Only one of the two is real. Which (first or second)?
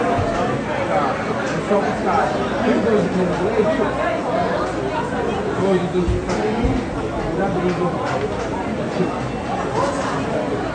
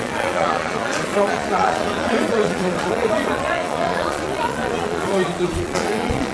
first